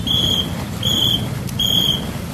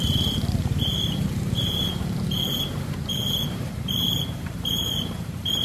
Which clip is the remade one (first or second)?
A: second